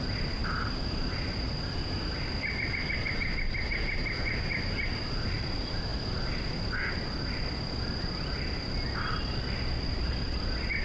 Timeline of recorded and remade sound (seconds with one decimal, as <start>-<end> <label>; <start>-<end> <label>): 0.0-10.8 recorded